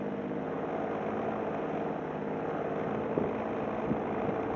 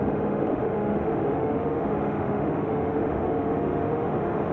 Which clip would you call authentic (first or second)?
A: first